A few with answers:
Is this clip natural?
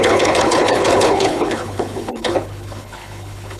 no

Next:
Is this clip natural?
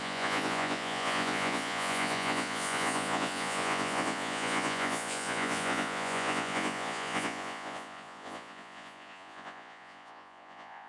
no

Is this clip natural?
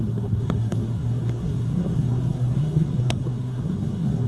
no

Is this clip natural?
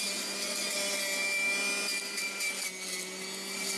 yes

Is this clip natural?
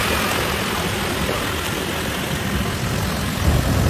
yes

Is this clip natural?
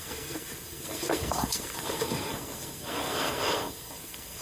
no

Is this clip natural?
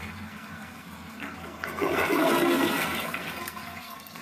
no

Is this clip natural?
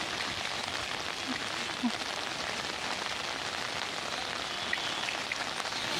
yes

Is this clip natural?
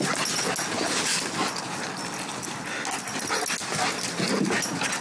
yes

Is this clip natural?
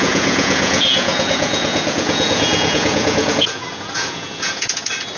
no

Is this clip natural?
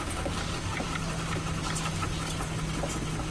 yes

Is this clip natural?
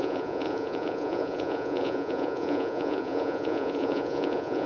no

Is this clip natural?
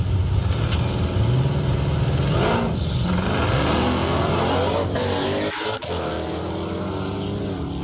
yes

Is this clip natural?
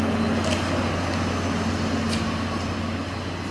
yes